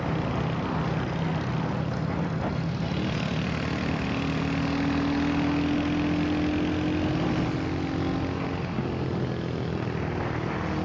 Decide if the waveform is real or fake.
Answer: real